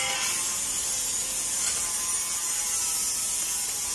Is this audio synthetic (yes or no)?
no